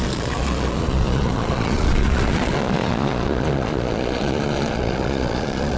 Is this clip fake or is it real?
fake